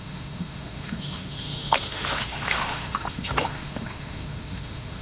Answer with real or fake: fake